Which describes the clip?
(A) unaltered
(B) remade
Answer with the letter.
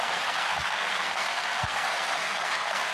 B